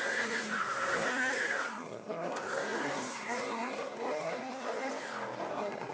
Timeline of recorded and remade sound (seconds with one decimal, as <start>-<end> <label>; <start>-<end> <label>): 0.0-4.9 remade; 4.9-5.5 recorded; 5.5-5.9 remade